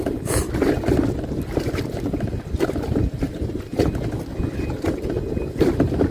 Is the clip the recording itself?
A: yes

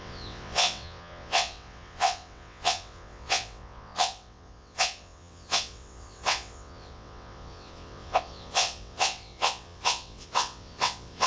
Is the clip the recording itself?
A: no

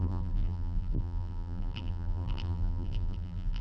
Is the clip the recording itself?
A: no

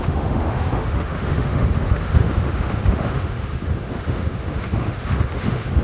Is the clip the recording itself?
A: no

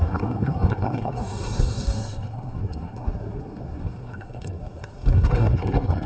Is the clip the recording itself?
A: no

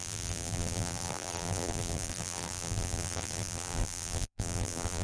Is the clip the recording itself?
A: no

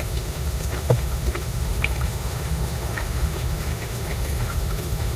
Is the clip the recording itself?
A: no